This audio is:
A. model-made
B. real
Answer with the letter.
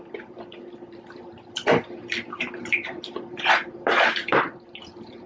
A